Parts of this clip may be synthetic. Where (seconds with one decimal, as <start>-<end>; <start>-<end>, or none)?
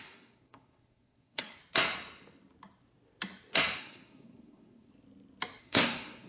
0.0-1.6; 3.8-4.9; 5.6-6.3